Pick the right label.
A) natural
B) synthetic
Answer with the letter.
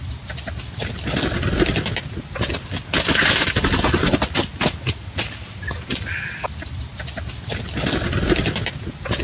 A